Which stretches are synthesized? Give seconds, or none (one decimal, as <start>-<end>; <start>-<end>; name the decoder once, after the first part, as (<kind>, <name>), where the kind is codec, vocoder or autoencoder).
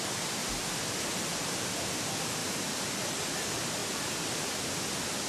0.0-2.4 (vocoder, BigVGAN v2); 3.2-5.3